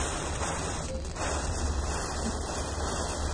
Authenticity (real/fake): fake